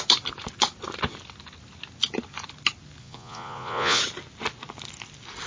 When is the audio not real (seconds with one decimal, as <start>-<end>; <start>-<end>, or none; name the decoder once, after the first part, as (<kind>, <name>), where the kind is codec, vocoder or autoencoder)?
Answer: 3.0-4.0 (vocoder, Vocos)